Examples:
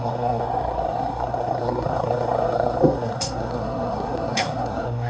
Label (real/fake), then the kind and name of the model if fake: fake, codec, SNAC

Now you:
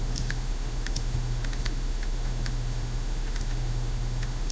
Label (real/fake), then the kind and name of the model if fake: fake, autoencoder, DAC-VAE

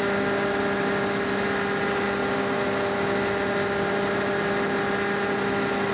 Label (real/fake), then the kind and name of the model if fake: real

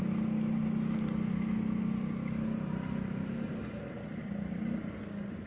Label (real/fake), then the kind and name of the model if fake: real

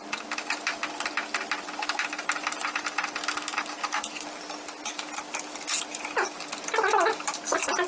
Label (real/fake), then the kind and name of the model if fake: real